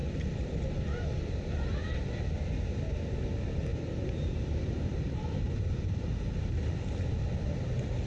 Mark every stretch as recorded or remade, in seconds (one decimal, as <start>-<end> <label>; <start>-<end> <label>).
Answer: 0.0-3.7 recorded; 3.7-6.7 remade; 6.7-8.1 recorded